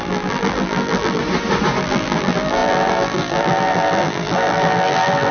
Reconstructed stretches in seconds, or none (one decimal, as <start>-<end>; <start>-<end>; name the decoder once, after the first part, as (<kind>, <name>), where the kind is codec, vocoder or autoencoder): 0.0-1.2 (vocoder, BigVGAN v2); 1.8-5.3